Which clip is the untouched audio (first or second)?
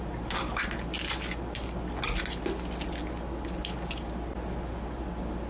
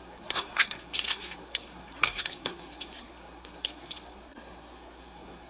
first